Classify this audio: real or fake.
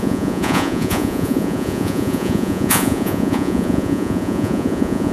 fake